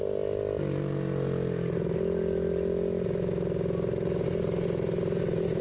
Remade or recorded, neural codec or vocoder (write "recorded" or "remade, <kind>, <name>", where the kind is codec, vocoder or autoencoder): recorded